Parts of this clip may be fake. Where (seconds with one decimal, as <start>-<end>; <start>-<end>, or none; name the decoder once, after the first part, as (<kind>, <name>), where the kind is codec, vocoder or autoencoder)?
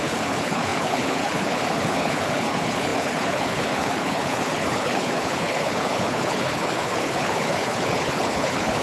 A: 0.0-8.8 (codec, HILCodec)